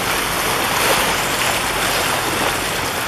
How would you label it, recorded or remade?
recorded